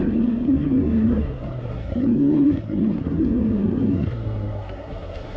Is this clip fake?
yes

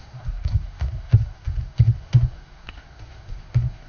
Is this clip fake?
yes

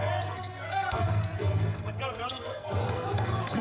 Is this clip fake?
yes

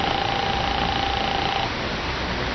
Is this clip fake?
no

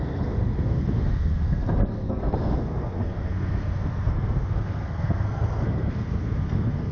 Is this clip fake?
yes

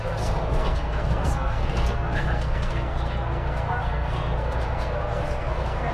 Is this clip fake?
yes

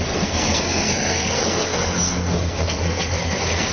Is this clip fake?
yes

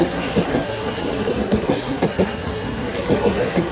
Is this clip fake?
yes